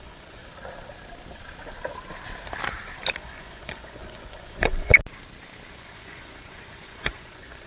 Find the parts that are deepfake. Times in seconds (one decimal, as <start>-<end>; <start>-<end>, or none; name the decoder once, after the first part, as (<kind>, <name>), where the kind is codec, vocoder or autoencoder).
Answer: 0.0-0.4 (vocoder, Vocos); 3.2-4.9; 5.7-7.7